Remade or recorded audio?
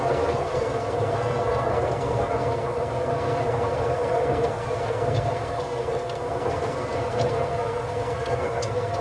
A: remade